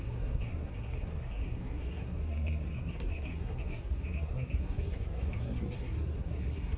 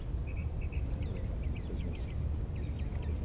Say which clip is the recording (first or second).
second